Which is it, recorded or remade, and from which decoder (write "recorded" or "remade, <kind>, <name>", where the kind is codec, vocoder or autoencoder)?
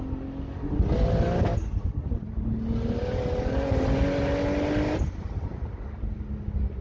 recorded